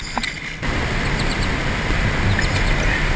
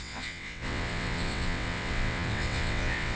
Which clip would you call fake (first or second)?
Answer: second